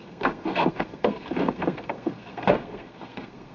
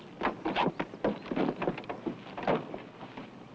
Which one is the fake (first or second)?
first